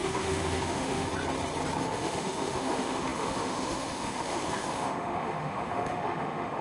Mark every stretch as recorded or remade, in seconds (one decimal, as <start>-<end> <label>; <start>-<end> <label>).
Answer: 0.0-1.1 remade; 1.1-1.8 recorded; 1.8-6.6 remade